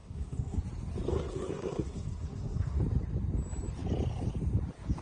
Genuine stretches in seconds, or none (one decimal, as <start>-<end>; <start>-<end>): 0.6-1.1; 2.8-5.0